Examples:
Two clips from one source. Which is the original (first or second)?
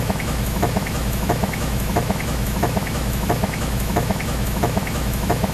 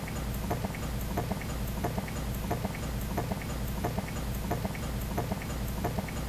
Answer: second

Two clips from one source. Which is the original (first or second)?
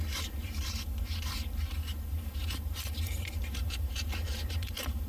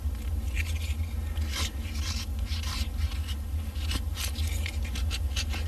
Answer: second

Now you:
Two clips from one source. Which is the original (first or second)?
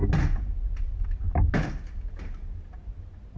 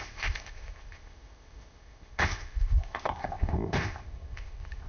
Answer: first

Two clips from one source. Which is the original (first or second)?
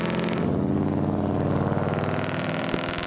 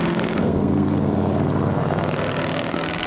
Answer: first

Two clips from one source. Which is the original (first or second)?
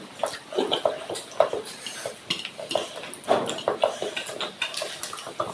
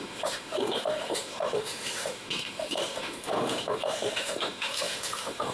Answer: first